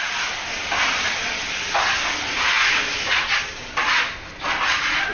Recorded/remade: recorded